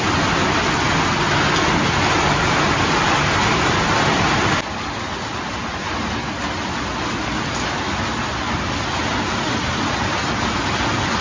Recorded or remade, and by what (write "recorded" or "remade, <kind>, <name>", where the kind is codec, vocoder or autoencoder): recorded